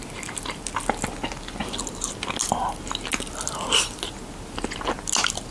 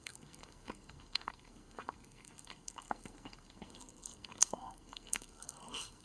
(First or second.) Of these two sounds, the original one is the first